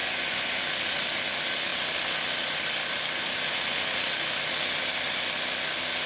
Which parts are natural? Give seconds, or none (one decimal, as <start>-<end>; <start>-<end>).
0.6-6.1

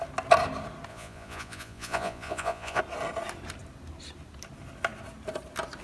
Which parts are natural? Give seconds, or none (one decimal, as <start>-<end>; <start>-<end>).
0.0-0.9; 2.8-5.8

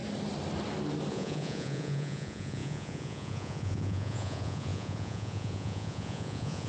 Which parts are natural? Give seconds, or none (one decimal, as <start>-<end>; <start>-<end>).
0.0-1.1

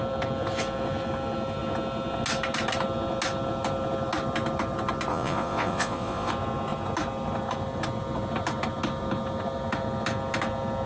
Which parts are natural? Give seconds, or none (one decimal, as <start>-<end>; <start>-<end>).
0.0-5.1; 6.3-10.9

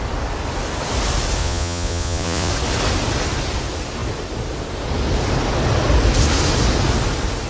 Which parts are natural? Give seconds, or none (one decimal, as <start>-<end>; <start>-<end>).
0.0-1.4; 2.5-7.5

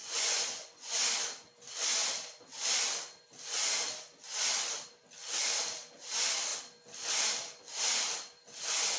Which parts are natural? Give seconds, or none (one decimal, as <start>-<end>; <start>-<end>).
1.0-9.0

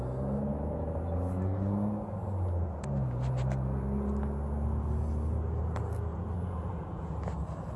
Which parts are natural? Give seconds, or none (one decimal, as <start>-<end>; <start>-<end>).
0.0-6.1; 7.1-7.8